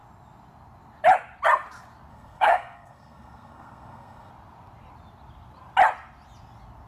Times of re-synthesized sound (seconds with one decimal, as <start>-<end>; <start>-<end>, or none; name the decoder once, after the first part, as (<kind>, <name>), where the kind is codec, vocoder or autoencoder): 2.1-4.3 (codec, SNAC)